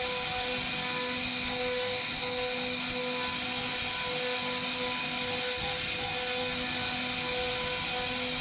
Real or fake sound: real